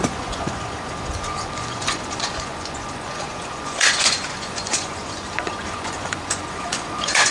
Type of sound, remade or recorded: remade